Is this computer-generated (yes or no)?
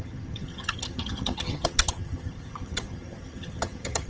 yes